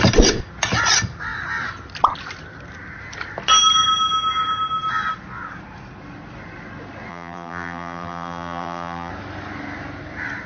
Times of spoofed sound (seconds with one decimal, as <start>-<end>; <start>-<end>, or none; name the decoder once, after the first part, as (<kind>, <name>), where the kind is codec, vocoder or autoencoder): 7.1-9.1 (vocoder, BigVGAN v2)